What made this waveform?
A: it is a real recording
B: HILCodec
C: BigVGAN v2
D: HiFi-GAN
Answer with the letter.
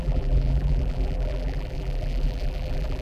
C